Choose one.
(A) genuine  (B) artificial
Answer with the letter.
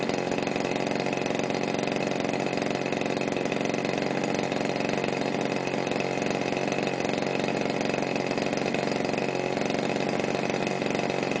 A